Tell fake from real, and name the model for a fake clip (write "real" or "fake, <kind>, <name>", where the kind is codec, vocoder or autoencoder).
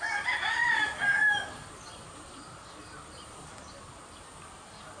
fake, vocoder, BigVGAN v2